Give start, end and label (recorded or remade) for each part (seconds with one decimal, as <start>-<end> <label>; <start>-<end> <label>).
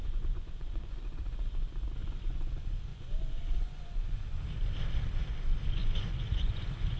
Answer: 0.0-1.2 remade; 1.2-2.0 recorded; 2.0-2.5 remade; 2.5-2.9 recorded; 2.9-4.4 remade; 4.4-5.8 recorded; 5.8-7.0 remade